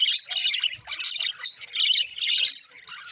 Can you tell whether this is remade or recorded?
recorded